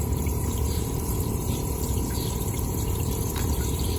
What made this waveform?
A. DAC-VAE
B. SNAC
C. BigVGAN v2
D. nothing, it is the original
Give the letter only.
C